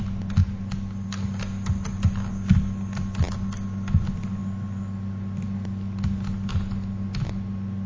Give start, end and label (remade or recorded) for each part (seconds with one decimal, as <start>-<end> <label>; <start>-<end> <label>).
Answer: 0.0-7.9 recorded